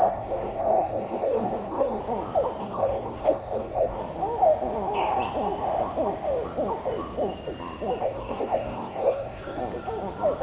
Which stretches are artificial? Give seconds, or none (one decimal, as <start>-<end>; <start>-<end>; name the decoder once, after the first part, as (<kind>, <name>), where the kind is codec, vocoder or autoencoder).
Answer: 0.0-2.0 (codec, SNAC); 2.6-4.0; 8.0-9.6